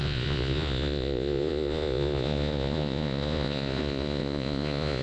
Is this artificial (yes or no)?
yes